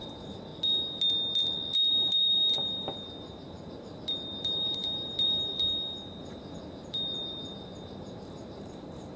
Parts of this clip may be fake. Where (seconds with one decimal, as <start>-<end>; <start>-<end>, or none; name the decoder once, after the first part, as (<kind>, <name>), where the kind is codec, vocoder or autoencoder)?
0.0-0.5 (vocoder, BigVGAN v2); 1.9-5.5; 6.2-9.2